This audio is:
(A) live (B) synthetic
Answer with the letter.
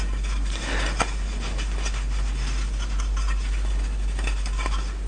A